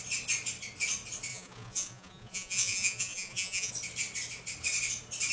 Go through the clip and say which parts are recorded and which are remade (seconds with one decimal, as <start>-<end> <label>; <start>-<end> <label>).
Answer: 0.0-1.3 recorded; 1.3-3.7 remade; 3.7-5.3 recorded